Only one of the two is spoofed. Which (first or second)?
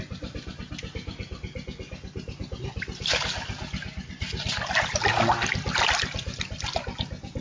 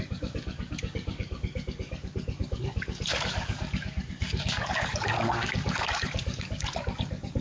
second